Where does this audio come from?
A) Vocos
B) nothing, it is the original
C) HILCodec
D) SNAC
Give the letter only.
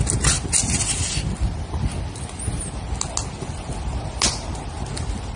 B